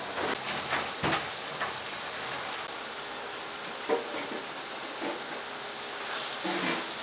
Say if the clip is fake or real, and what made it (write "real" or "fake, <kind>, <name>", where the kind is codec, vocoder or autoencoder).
real